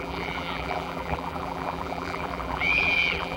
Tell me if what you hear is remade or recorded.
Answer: remade